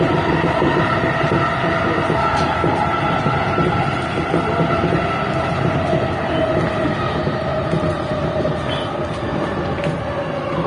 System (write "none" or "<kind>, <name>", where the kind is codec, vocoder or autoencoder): none